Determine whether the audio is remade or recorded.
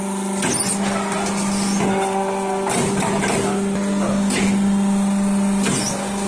recorded